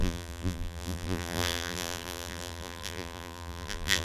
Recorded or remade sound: remade